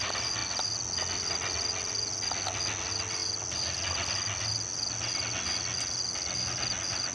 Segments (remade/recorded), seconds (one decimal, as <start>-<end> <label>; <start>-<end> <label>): 0.0-7.1 recorded